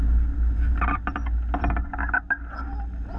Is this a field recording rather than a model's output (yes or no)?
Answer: yes